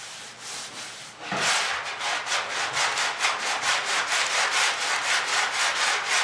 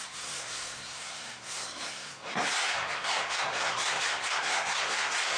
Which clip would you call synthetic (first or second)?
second